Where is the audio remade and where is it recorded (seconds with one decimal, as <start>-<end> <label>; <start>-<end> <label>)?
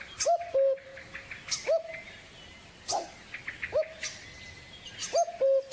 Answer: 0.0-5.7 recorded